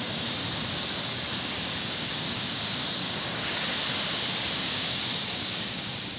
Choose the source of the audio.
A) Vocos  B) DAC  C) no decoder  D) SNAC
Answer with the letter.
B